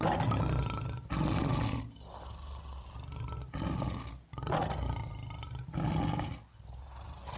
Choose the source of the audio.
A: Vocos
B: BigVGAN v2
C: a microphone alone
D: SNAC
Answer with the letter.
C